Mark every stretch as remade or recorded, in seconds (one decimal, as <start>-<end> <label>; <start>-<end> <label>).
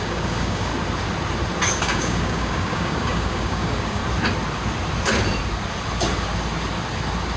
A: 0.0-0.7 remade; 0.7-1.7 recorded; 1.7-4.0 remade; 4.0-7.4 recorded